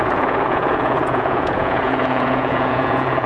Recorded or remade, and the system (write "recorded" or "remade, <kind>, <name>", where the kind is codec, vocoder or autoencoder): remade, vocoder, Vocos